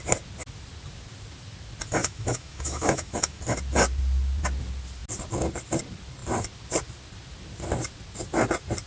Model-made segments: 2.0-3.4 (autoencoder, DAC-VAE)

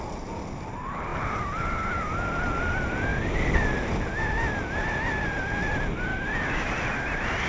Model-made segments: 6.1-6.7 (autoencoder, DAC-VAE)

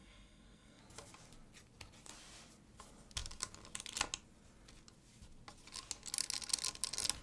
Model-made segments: 0.0-0.8 (codec, SNAC)

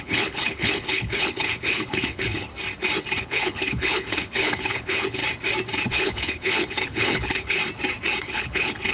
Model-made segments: 0.0-2.5 (codec, HILCodec); 3.2-5.2; 5.9-7.6; 8.2-8.9

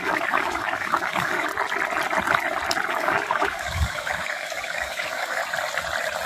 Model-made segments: 0.0-1.5 (codec, DAC); 2.9-5.4

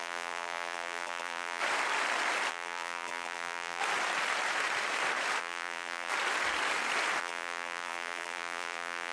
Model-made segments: 0.0-1.6 (vocoder, BigVGAN v2); 2.5-3.8; 5.4-6.1; 7.2-9.1